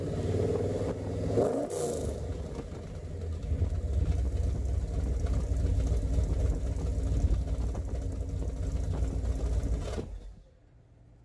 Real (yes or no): yes